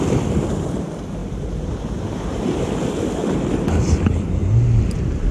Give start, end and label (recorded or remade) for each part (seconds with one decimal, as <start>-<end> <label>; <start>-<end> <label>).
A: 0.0-1.2 recorded; 1.2-2.7 remade; 2.7-5.3 recorded